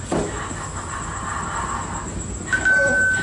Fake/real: real